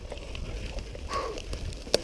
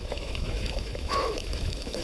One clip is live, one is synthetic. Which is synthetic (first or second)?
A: second